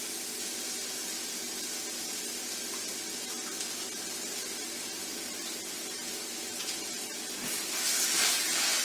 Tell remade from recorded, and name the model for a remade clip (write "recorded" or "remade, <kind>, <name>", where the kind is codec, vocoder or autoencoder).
recorded